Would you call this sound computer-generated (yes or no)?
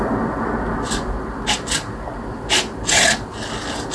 no